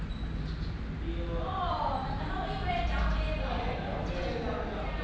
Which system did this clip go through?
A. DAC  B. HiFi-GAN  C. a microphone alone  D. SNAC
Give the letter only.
C